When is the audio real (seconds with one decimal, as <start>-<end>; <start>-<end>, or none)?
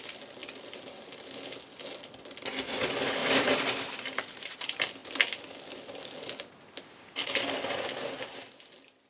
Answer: 0.0-3.2; 4.6-9.1